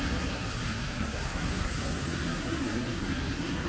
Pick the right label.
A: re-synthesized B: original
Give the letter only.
A